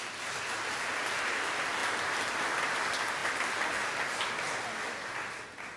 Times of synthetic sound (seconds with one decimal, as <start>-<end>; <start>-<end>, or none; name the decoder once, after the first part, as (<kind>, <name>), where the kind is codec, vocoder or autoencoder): none

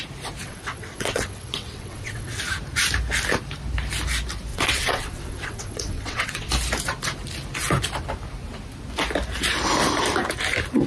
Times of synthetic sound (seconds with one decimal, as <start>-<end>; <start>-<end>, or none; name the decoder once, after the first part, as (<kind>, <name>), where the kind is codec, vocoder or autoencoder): 0.4-2.4 (vocoder, WaveNeXt); 4.5-6.5